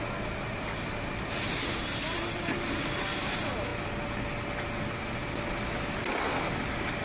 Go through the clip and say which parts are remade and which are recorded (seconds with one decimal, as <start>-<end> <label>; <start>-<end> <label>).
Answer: 0.0-7.0 recorded